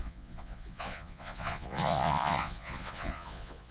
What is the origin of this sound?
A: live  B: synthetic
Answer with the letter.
B